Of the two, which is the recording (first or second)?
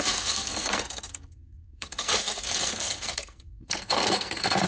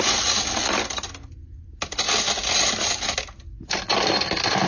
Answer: second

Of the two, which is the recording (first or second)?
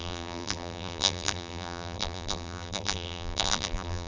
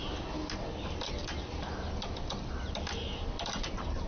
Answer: second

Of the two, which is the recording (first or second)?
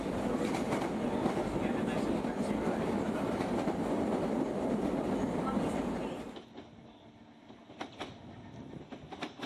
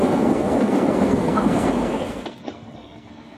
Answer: first